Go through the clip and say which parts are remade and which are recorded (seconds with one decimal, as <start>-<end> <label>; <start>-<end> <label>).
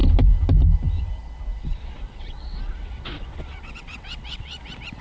0.0-1.6 recorded; 1.6-4.6 remade; 4.6-5.0 recorded